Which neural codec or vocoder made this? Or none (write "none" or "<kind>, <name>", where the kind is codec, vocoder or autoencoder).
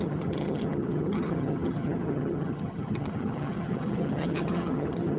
vocoder, HiFi-GAN